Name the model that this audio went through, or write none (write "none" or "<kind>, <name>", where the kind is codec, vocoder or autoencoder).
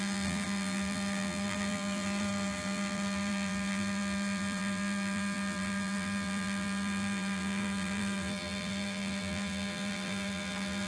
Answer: vocoder, BigVGAN v2